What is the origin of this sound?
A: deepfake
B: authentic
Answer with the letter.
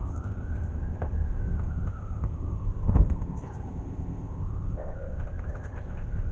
A